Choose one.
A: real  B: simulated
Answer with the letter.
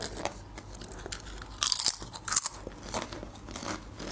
A